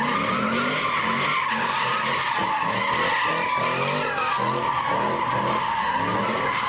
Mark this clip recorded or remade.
recorded